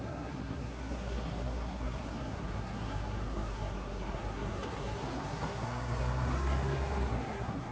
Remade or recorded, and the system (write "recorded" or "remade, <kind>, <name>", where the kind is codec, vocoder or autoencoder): remade, codec, SNAC